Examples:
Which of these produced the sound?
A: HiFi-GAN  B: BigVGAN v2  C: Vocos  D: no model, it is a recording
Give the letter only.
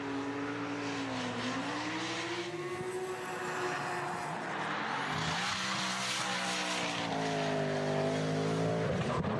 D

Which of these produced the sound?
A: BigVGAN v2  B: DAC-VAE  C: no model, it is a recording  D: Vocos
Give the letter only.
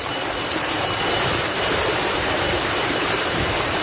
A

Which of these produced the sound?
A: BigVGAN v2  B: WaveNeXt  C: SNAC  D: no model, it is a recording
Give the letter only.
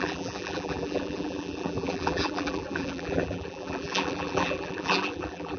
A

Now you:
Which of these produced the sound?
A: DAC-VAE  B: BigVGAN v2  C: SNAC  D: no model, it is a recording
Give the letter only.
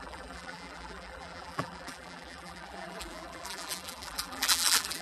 B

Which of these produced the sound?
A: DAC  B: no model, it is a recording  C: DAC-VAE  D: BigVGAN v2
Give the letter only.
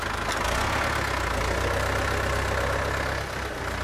B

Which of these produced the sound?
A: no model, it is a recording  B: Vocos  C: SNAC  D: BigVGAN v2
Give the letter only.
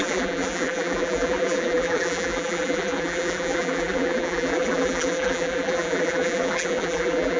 D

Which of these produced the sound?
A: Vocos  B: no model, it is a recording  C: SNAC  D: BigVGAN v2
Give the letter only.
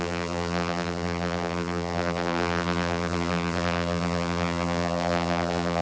D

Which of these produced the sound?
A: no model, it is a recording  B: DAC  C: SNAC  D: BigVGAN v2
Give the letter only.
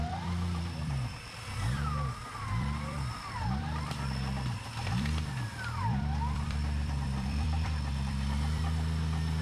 D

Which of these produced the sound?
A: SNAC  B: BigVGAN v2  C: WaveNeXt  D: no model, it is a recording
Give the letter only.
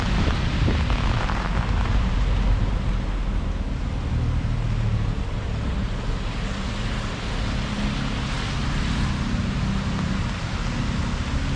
D